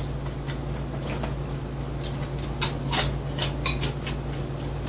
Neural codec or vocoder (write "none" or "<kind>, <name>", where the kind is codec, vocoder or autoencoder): none